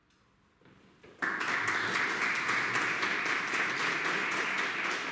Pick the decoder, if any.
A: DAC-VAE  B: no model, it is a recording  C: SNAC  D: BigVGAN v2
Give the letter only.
B